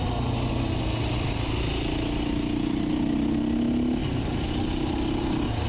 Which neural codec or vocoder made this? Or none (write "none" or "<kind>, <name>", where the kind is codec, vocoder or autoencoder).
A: none